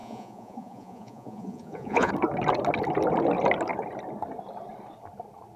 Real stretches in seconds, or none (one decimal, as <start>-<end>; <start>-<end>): 2.1-5.6